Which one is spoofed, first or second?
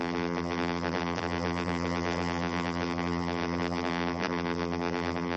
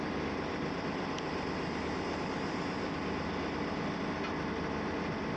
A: first